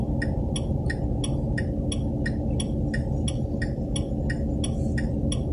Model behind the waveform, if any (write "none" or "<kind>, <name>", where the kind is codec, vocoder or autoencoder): none